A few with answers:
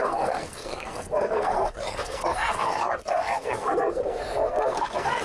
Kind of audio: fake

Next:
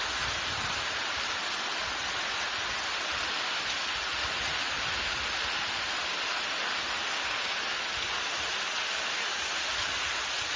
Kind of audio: real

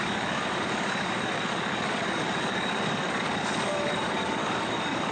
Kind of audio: fake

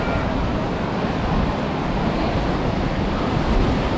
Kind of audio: real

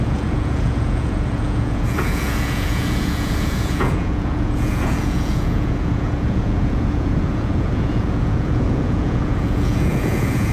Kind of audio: fake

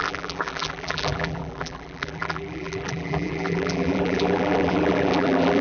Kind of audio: fake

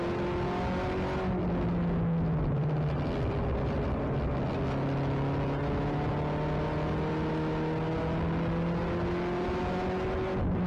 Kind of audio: real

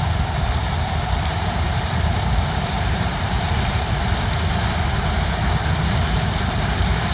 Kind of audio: fake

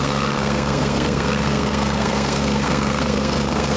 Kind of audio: fake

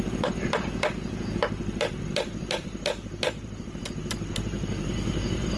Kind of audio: fake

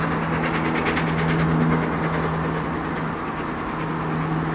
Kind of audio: real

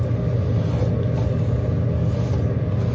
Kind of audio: real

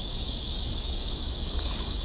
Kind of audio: fake